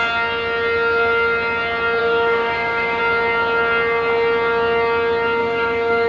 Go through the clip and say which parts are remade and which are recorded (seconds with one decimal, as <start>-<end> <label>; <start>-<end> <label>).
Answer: 0.0-2.0 recorded; 2.0-3.0 remade; 3.0-5.4 recorded; 5.4-6.1 remade